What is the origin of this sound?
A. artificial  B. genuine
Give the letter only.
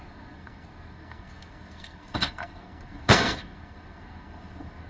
A